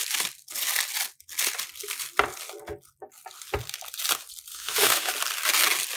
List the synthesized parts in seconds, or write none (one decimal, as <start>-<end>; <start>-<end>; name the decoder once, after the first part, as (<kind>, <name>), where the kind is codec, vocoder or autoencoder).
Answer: 4.5-5.1 (autoencoder, DAC-VAE)